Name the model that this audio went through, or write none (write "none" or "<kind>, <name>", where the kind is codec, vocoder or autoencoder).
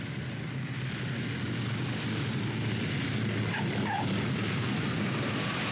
none